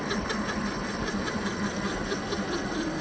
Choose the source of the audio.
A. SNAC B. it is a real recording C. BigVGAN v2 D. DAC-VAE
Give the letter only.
B